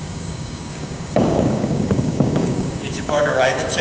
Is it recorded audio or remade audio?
remade